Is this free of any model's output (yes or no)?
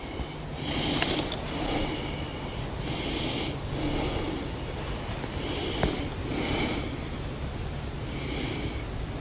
yes